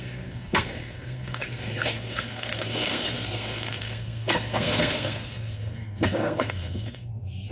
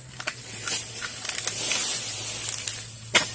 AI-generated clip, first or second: first